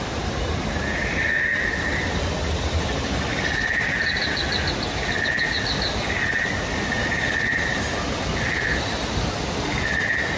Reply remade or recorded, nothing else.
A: recorded